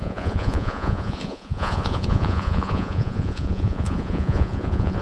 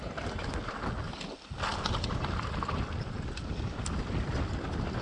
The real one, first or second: second